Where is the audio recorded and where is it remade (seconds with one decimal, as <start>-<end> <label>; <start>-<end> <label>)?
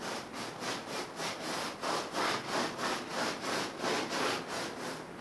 0.0-5.2 recorded